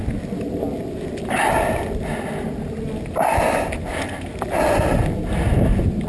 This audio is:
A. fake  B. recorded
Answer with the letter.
B